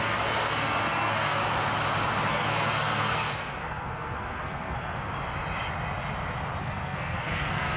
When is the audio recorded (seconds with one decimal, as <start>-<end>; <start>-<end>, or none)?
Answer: 1.4-2.3; 5.1-6.6